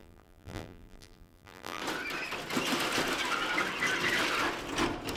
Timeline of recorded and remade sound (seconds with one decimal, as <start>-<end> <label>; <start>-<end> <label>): 0.0-1.8 remade; 1.8-5.2 recorded